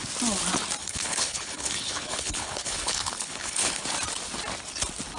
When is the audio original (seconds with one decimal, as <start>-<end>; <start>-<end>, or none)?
0.0-0.8; 3.9-5.2